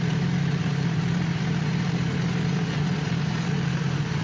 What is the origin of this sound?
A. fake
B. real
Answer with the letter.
A